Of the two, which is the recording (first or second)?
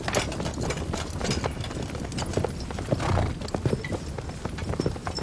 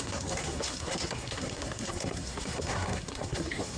first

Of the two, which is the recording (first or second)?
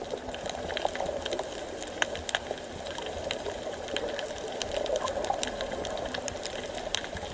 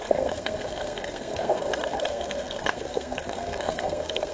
first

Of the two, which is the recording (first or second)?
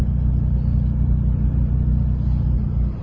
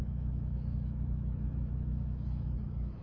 first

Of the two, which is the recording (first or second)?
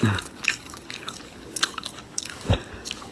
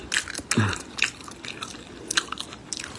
second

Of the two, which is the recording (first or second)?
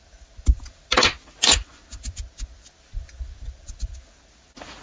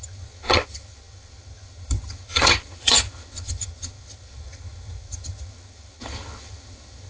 first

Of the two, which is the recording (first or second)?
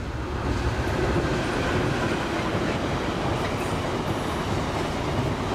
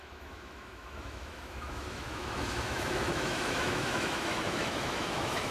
first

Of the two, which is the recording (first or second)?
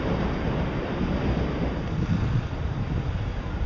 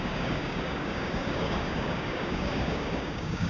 first